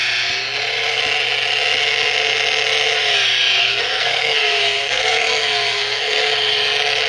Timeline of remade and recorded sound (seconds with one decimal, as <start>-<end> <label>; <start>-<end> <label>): 0.0-3.6 recorded; 3.6-6.3 remade; 6.3-7.1 recorded